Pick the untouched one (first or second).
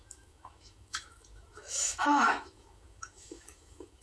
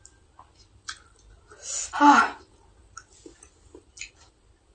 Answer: second